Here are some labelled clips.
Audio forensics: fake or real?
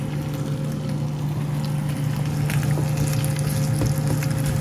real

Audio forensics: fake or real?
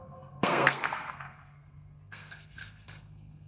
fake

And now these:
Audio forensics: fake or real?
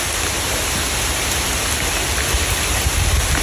real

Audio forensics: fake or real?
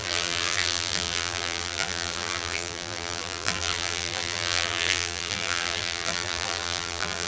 fake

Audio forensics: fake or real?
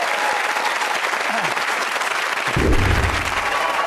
real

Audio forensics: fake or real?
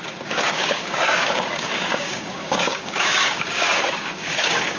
fake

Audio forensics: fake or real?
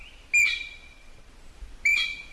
real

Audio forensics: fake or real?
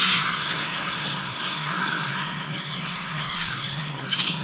fake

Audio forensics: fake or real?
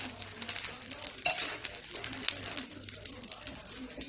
real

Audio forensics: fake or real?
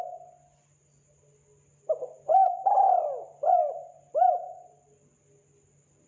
real